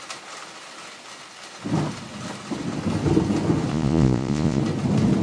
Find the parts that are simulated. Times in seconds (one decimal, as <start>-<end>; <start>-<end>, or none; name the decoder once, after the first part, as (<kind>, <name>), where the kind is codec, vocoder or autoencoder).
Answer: 3.7-4.6 (vocoder, Vocos)